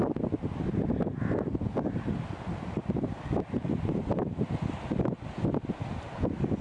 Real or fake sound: real